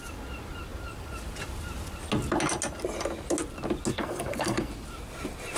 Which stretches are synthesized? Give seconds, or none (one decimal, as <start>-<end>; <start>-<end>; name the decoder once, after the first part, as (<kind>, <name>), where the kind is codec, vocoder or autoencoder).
3.9-4.7 (codec, SNAC)

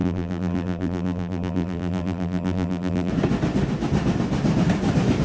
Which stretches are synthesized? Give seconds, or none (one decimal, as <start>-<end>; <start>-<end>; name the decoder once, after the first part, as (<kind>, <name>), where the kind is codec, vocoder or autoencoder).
0.0-3.1 (vocoder, BigVGAN v2)

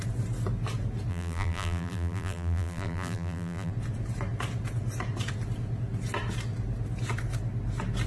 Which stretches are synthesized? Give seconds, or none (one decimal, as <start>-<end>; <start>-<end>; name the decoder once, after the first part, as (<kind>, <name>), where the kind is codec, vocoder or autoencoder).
1.1-3.7 (vocoder, BigVGAN v2)